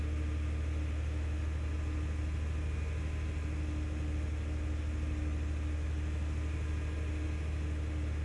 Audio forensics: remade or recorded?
recorded